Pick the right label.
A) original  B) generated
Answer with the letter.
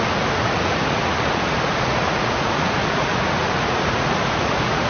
B